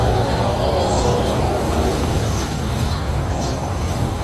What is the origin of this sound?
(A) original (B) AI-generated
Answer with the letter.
B